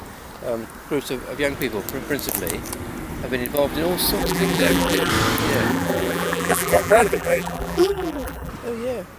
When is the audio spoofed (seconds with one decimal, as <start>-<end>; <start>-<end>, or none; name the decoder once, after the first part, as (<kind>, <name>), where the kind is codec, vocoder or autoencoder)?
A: 4.2-5.1 (vocoder, BigVGAN v2); 5.7-8.5